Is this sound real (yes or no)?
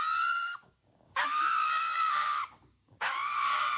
no